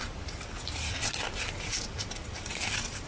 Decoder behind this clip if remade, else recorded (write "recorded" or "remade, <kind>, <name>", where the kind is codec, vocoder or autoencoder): recorded